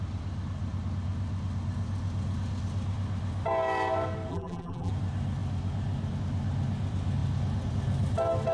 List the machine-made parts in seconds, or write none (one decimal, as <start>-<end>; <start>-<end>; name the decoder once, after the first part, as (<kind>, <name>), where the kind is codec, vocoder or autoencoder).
4.3-4.9 (vocoder, BigVGAN v2)

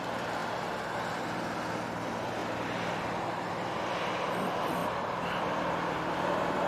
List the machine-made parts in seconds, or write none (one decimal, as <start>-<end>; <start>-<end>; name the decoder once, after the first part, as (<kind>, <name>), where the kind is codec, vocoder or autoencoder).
0.0-0.4 (vocoder, BigVGAN v2); 1.2-4.8; 5.4-6.7